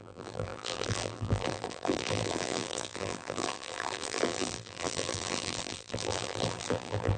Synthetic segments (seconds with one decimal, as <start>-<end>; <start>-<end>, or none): 0.0-7.2